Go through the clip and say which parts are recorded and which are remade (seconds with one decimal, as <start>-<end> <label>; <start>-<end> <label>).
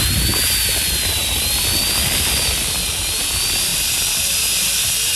0.0-5.2 recorded